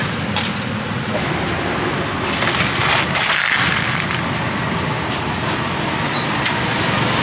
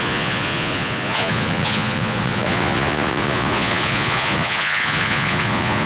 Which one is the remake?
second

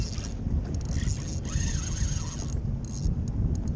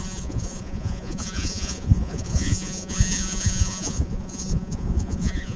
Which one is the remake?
second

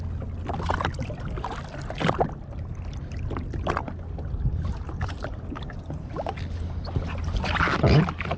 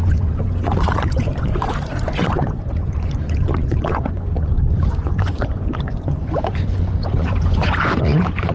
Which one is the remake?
second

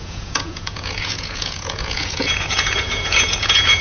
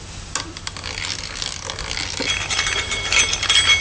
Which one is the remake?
first